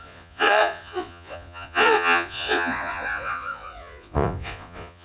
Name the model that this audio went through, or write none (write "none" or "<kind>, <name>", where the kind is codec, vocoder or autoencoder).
vocoder, Vocos